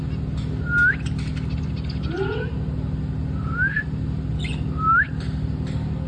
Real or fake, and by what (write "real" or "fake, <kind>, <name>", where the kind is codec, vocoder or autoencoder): real